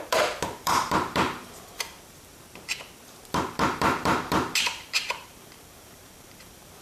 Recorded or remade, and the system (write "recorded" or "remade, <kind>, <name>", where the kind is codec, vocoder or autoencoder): remade, vocoder, BigVGAN v2